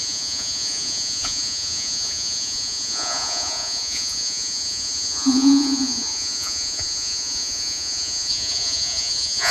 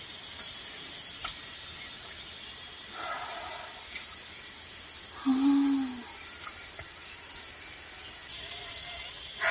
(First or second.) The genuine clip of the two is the second